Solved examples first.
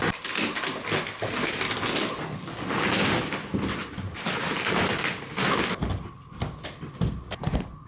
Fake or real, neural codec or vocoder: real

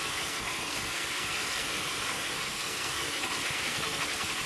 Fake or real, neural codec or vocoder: fake, codec, SNAC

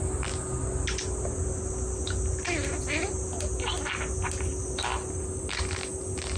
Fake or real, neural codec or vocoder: real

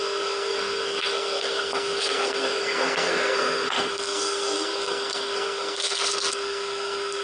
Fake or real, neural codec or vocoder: fake, codec, SNAC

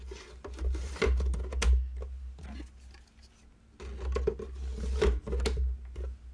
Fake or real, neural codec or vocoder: real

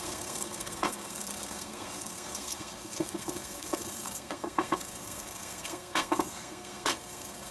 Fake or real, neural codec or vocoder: fake, codec, SNAC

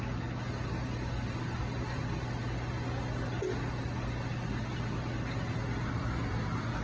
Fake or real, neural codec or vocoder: real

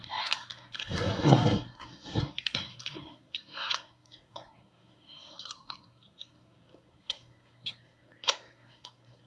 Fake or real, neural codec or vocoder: fake, codec, SNAC